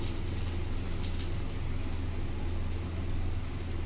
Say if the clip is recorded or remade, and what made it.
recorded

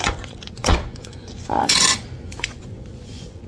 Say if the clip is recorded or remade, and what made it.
remade, vocoder, Vocos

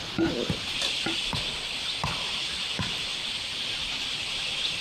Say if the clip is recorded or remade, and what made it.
recorded